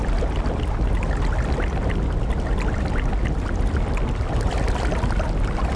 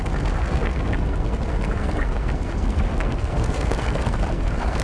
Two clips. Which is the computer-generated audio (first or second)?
second